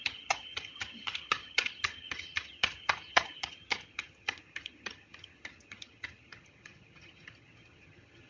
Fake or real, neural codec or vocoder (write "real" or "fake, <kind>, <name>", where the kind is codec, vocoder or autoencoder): fake, vocoder, HiFi-GAN